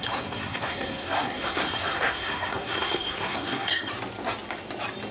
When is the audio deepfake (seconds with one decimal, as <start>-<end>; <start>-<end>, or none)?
0.0-3.9